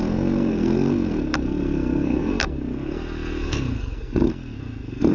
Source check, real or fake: fake